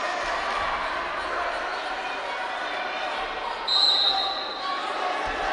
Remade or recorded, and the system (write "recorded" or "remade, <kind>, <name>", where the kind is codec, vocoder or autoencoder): recorded